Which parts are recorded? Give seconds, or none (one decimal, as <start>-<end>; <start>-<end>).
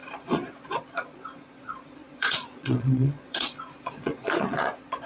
none